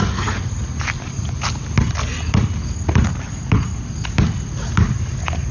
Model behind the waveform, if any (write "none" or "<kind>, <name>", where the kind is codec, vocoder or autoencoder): none